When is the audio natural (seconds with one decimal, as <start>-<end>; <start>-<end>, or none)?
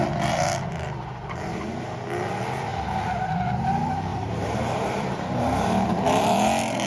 0.0-4.1; 6.0-6.9